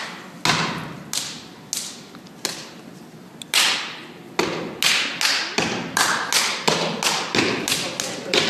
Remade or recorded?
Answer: recorded